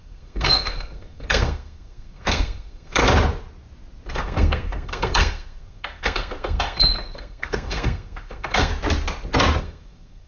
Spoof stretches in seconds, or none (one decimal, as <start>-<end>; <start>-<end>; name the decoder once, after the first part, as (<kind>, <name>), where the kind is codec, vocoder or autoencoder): 0.0-3.0 (codec, SNAC); 4.1-8.7; 9.6-10.3